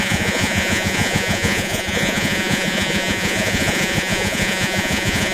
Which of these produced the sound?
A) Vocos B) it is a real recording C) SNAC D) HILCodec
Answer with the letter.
A